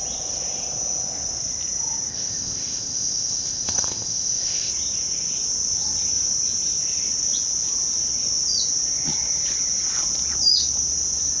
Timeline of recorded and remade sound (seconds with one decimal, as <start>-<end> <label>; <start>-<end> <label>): 0.0-2.1 recorded; 2.1-4.7 remade; 4.7-11.4 recorded